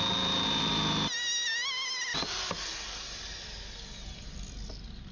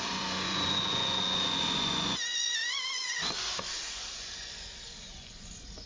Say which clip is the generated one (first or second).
second